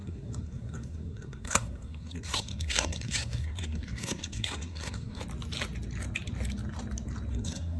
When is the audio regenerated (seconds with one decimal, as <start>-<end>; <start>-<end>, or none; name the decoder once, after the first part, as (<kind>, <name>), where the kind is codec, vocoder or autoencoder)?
0.0-5.2 (codec, SNAC); 7.3-7.8